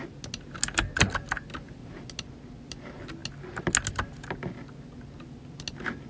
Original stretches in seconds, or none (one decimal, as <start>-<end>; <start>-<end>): 0.0-6.1